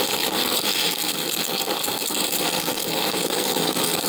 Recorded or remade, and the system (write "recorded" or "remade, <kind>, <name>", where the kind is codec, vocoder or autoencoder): remade, codec, SNAC